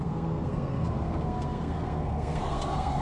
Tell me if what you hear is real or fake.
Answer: fake